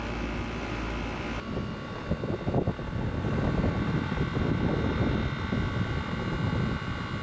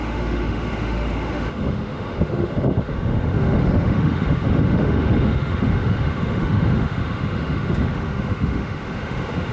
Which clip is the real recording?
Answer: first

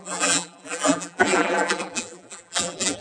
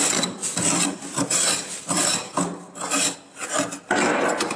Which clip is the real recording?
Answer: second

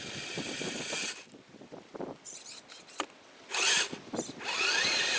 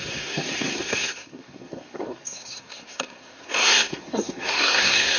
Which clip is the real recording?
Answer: first